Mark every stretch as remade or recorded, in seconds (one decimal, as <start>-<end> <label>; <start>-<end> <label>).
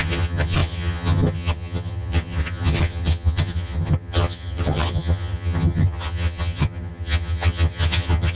0.0-8.4 remade